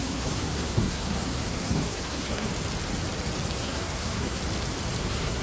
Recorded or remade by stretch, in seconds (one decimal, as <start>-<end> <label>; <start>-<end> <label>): 0.0-2.5 remade; 2.5-3.6 recorded; 3.6-4.4 remade; 4.4-5.0 recorded; 5.0-5.4 remade